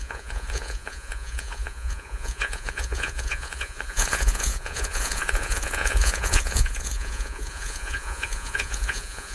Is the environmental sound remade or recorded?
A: remade